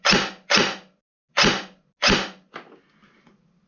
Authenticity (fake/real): real